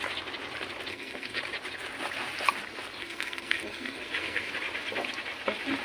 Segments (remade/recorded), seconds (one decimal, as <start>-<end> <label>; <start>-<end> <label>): 0.0-0.9 recorded; 0.9-1.4 remade; 1.4-3.0 recorded; 3.0-4.5 remade; 4.5-5.8 recorded